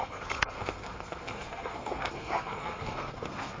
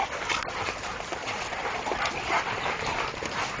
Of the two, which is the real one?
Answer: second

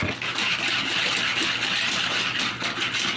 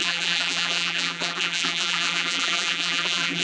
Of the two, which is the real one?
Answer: first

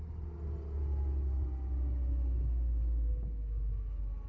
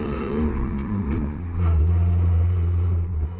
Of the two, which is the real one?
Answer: first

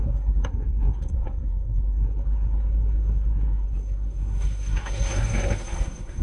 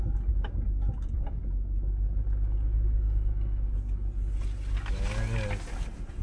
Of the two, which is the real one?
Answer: second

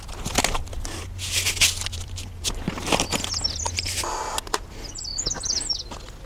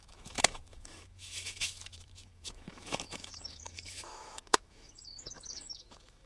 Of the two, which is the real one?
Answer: first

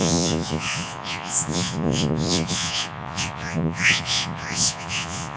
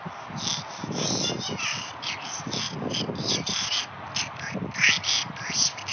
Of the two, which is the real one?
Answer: second